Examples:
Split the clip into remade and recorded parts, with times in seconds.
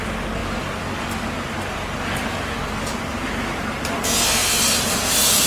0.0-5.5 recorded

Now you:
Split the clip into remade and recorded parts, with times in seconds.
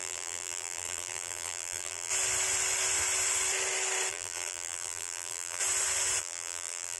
0.0-2.1 remade; 2.1-4.1 recorded; 4.1-5.6 remade; 5.6-6.2 recorded; 6.2-7.0 remade